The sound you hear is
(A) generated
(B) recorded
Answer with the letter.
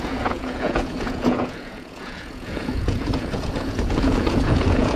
A